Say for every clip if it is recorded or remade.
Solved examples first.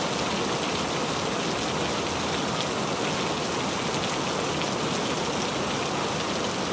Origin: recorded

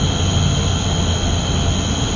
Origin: recorded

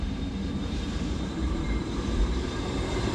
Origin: remade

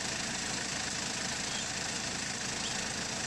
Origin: recorded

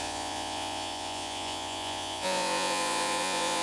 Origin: remade